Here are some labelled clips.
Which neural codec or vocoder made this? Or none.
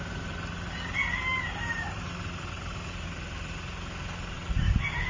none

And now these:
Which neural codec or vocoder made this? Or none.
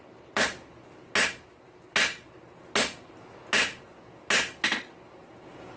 none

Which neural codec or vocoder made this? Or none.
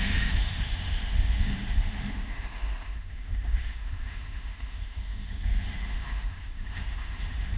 autoencoder, DAC-VAE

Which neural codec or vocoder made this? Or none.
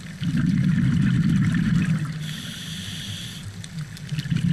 none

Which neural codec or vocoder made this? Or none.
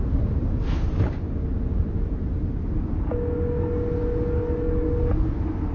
none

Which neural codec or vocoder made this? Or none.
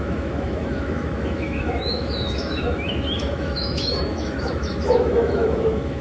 autoencoder, DAC-VAE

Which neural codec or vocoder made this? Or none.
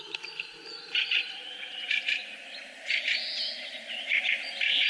vocoder, BigVGAN v2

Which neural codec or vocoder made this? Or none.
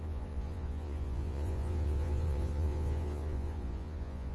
vocoder, Vocos